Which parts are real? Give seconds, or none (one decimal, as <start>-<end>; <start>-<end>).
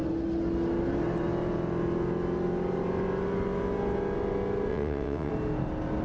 0.0-4.7; 5.3-6.0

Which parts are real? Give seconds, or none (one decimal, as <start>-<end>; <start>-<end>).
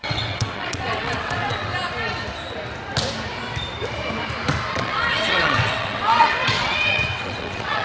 1.7-4.7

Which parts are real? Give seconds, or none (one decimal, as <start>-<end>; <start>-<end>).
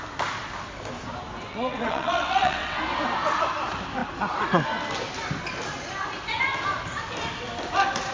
0.0-1.5; 2.8-8.1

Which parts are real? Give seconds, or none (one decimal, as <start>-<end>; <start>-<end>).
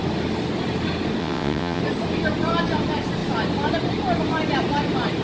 0.0-1.2; 1.8-5.2